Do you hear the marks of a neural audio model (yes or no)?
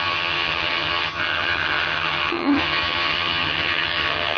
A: yes